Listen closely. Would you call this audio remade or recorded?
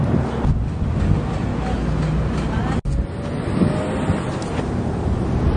recorded